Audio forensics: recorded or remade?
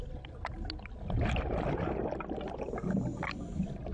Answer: recorded